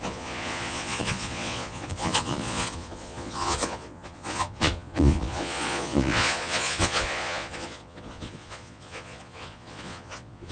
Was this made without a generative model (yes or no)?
no